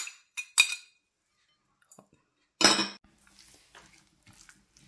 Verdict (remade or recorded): recorded